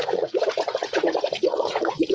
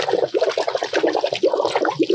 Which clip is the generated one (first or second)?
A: first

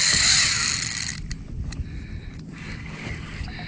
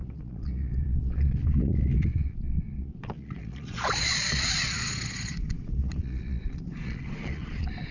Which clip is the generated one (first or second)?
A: second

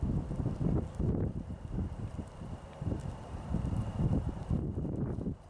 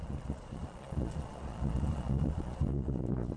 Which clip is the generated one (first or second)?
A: second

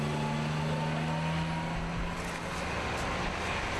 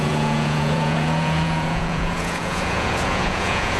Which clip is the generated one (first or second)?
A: second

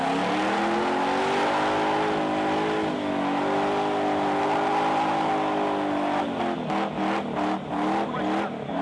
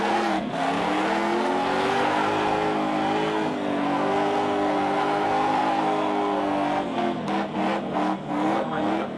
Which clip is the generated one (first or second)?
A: second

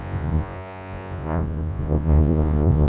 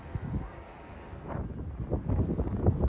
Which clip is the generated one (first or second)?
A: first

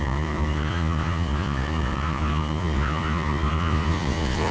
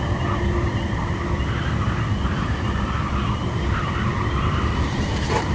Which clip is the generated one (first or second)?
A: first